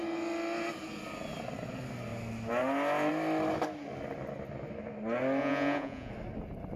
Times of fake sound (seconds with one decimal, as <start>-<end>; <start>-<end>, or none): 5.4-6.1